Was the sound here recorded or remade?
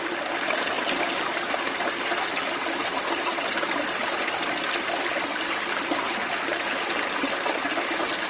recorded